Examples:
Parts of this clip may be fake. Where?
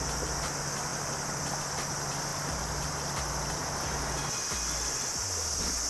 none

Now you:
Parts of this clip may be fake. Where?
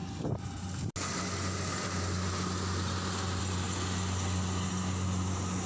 none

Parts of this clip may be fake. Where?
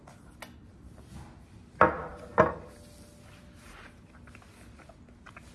none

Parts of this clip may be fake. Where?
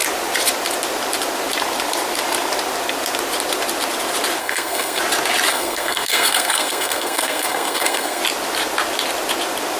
4.4-5.0 (codec, SNAC); 5.5-8.2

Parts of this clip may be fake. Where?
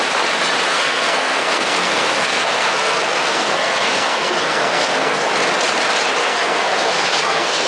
0.7-5.3 (codec, SNAC); 6.2-7.7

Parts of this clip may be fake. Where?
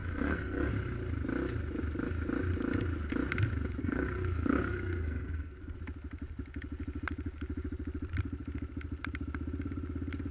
0.0-0.7 (codec, SNAC); 3.8-5.8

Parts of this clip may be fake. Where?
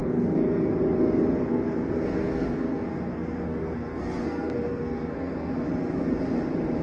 0.0-0.7 (codec, SNAC); 1.4-5.5